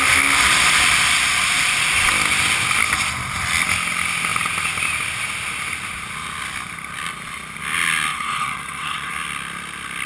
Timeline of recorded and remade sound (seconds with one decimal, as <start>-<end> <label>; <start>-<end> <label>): 0.0-8.1 recorded; 8.1-9.1 remade; 9.1-10.1 recorded